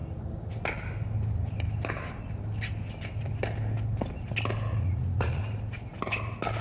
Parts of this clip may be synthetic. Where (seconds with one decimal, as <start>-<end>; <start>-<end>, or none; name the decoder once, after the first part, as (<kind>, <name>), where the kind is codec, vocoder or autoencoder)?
4.7-5.4 (vocoder, Vocos)